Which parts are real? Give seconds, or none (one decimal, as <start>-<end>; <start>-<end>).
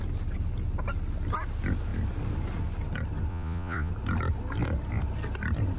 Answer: 0.0-3.3; 3.9-5.8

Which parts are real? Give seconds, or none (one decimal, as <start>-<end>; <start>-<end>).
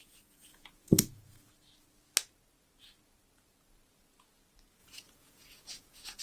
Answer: 1.5-4.8